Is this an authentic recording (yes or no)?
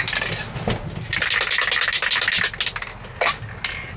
yes